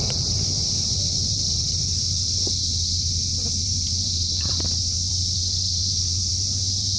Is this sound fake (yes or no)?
yes